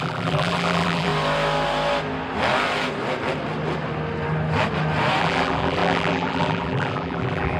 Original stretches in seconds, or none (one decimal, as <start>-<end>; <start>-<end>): 1.1-5.2

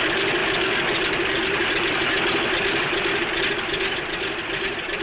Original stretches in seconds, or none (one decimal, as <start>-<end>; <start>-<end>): 0.0-5.0

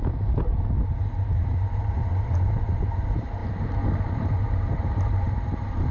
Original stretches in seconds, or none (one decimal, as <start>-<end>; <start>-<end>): 0.5-1.0; 3.4-4.1